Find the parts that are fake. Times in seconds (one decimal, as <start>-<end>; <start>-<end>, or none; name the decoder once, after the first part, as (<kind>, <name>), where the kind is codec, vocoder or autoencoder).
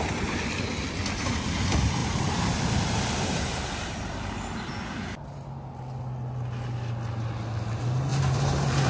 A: 2.0-4.7 (vocoder, BigVGAN v2); 8.1-8.9